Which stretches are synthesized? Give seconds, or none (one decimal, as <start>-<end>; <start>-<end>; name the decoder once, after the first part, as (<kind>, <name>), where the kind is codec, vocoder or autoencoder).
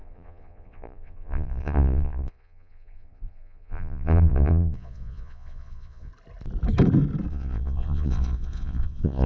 0.0-6.1 (vocoder, Vocos); 7.3-9.3